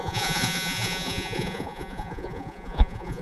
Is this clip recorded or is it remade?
remade